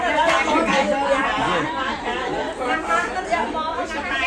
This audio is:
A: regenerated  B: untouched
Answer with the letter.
B